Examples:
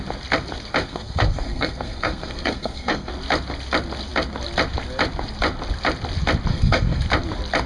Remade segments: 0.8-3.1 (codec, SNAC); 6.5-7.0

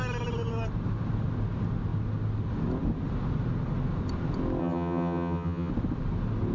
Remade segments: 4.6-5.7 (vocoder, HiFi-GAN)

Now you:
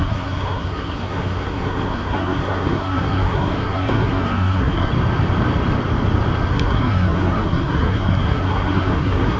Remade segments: 0.0-4.9 (codec, SNAC); 6.5-9.4

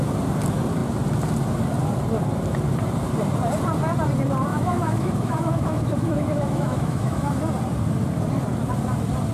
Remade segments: 4.5-7.4 (autoencoder, DAC-VAE)